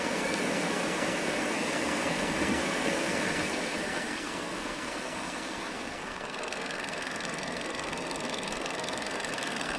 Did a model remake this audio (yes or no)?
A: yes